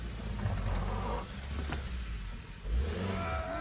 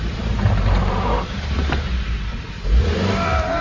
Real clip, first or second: first